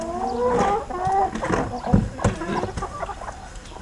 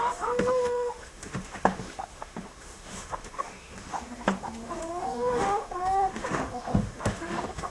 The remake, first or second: second